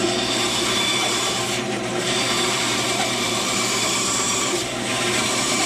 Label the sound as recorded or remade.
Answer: remade